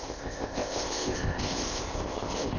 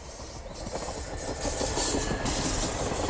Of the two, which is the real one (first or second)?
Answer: second